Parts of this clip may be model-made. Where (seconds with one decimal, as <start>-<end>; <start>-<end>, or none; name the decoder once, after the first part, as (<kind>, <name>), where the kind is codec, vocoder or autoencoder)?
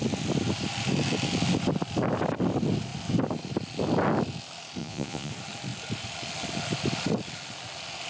4.8-5.3 (vocoder, Vocos)